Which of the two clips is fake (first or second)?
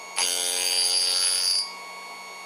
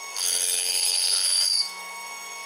second